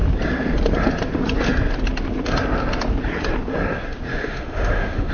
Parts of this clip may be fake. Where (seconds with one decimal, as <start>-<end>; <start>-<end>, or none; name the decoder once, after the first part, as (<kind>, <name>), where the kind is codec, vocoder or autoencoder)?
4.1-5.1 (autoencoder, DAC-VAE)